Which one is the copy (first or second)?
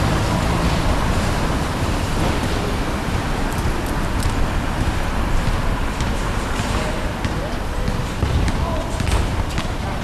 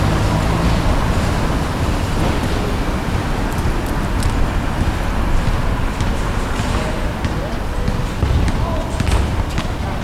first